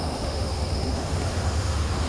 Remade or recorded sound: remade